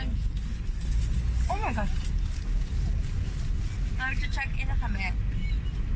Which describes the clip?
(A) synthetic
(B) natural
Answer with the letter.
B